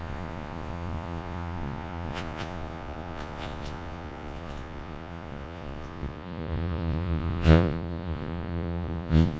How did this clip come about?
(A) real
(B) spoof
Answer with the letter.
B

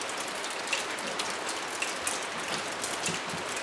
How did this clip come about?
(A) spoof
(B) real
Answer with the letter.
B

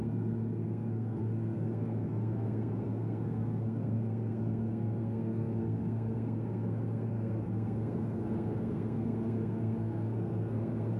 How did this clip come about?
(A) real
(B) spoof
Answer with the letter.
B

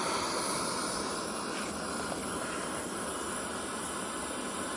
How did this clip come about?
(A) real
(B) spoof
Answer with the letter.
B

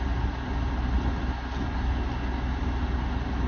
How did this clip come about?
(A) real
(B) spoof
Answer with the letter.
A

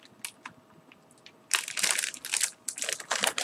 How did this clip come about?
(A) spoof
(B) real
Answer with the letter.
B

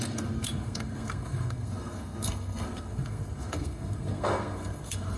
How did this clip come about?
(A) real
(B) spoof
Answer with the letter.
B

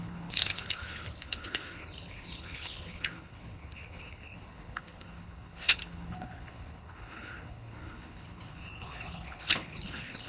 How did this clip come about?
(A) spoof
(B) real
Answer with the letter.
A